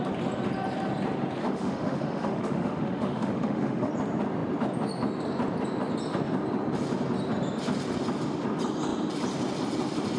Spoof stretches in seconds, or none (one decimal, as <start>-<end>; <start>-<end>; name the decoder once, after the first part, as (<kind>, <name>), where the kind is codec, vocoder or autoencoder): 1.4-3.9 (autoencoder, DAC-VAE)